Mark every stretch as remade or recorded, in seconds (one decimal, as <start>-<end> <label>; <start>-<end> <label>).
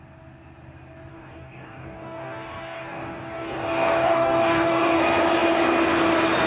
0.0-1.1 recorded; 1.1-5.0 remade; 5.0-6.5 recorded